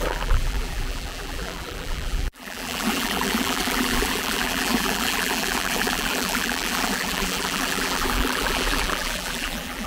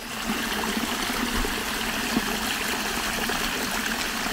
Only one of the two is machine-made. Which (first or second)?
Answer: first